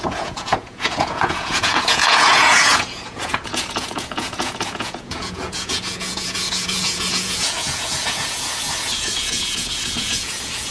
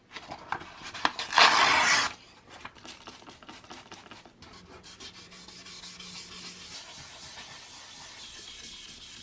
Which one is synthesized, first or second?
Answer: first